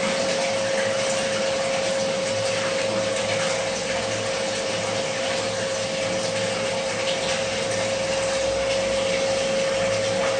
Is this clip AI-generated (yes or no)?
no